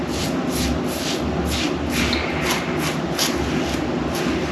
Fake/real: real